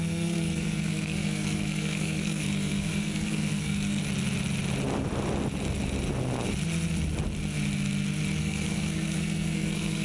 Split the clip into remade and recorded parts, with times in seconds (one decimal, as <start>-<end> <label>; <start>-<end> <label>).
0.0-4.0 remade; 4.0-8.4 recorded; 8.4-10.0 remade